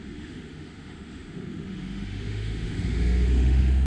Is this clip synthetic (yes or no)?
yes